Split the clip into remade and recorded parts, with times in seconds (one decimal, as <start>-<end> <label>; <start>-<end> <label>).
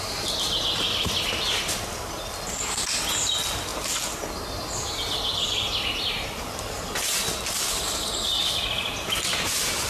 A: 0.0-9.9 recorded